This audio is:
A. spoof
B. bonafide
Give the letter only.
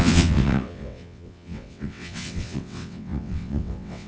A